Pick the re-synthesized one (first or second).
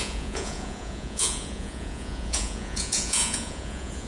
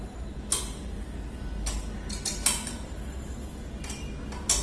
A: first